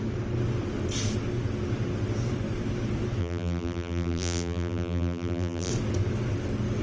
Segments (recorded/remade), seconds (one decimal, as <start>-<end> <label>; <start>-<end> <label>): 0.0-3.2 recorded; 3.2-5.7 remade; 5.7-6.8 recorded